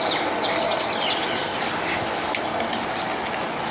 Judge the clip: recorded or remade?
recorded